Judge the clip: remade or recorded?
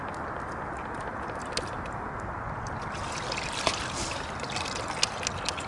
recorded